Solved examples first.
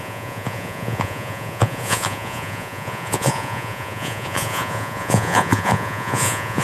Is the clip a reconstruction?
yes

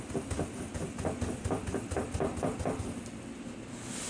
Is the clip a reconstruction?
no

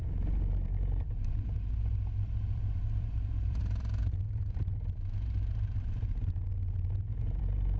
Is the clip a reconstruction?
yes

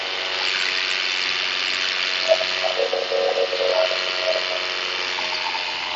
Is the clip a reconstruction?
no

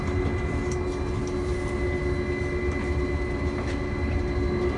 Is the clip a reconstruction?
no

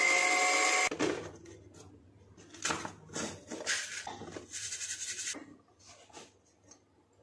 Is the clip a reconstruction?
no